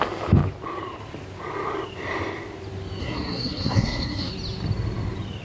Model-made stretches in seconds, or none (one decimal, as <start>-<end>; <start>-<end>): 3.0-4.3